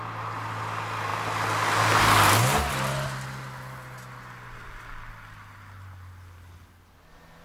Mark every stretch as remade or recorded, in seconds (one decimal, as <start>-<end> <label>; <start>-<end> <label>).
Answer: 0.0-7.4 recorded